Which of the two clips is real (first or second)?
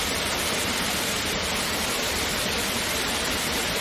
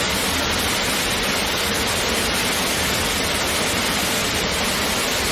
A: second